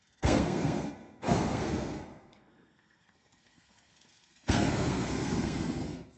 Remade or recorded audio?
remade